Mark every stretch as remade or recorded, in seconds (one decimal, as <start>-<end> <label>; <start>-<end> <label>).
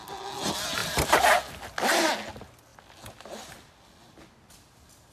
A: 0.0-5.1 recorded